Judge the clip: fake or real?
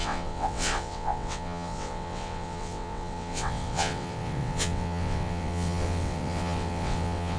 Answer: fake